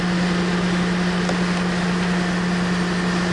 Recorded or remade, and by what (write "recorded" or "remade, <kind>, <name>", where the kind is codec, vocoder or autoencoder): recorded